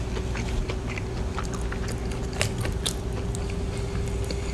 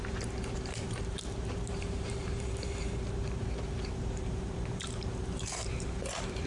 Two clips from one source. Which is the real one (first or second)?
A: first